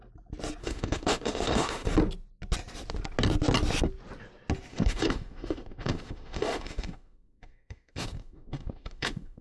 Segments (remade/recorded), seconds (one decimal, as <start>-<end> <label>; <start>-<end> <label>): 0.0-0.6 recorded; 0.6-1.9 remade; 1.9-4.7 recorded; 4.7-9.4 remade